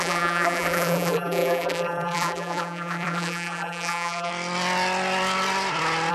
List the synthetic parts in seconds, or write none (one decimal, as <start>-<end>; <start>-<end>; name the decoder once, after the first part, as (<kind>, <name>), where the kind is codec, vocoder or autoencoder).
0.0-4.3 (vocoder, BigVGAN v2)